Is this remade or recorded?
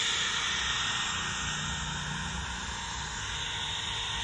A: recorded